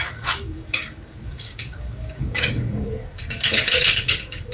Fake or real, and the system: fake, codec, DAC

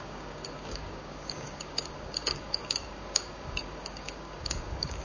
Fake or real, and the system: fake, codec, DAC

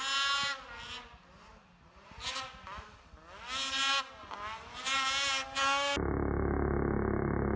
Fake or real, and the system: real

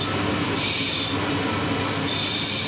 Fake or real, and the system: real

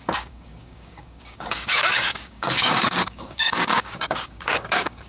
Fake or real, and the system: fake, codec, DAC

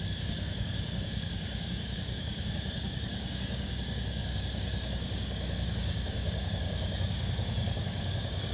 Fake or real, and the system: fake, codec, DAC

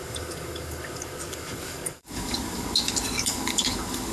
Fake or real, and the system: fake, codec, DAC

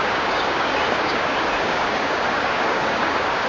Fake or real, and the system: fake, codec, DAC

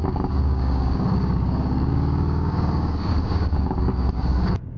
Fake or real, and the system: fake, codec, DAC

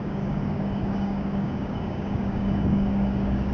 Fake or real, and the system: fake, codec, DAC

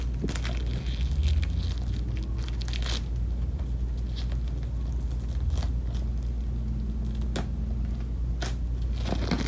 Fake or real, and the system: real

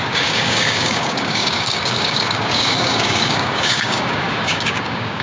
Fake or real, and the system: fake, codec, DAC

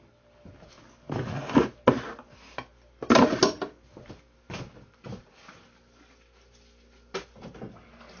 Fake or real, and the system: real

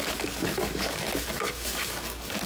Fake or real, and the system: fake, codec, DAC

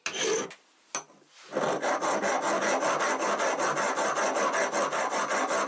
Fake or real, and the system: real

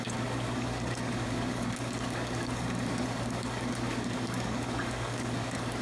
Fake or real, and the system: fake, codec, DAC